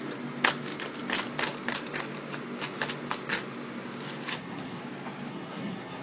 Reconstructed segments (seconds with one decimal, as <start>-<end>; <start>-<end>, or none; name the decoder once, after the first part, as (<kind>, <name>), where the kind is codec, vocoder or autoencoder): 4.3-4.8 (codec, SNAC); 5.3-6.0